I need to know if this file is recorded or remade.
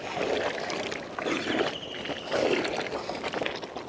recorded